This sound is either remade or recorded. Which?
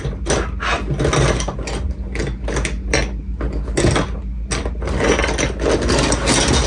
recorded